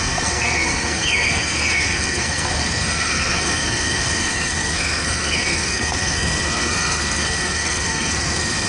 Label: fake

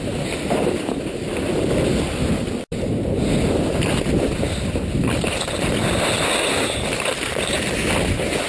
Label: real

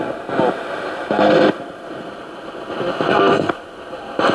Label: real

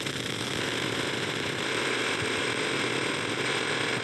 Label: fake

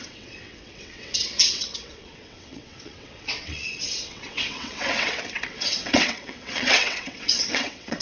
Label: fake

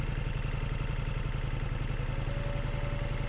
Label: real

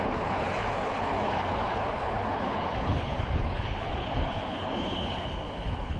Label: fake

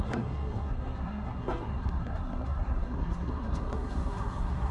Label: fake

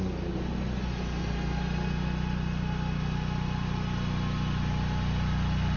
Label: real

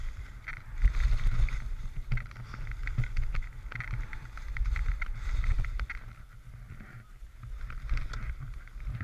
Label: real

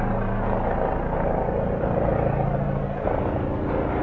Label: real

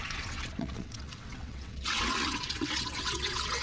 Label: fake